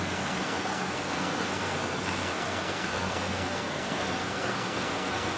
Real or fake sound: fake